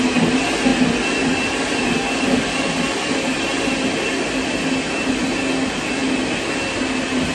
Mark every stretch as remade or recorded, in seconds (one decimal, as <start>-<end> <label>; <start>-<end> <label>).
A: 0.0-7.3 recorded